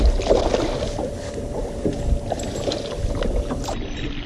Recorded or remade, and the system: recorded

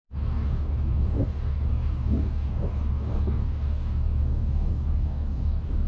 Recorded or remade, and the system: remade, codec, DAC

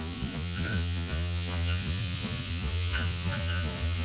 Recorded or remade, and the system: remade, vocoder, Vocos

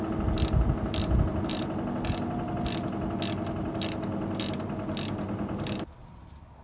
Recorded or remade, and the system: recorded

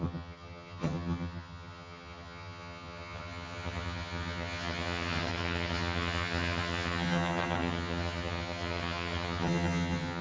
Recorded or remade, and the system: remade, vocoder, HiFi-GAN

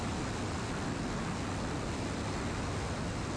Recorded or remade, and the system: recorded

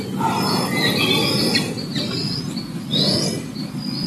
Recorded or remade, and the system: recorded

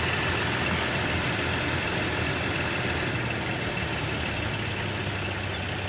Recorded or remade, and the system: recorded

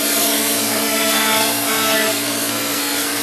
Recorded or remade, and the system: remade, codec, SNAC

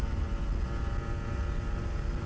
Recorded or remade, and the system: recorded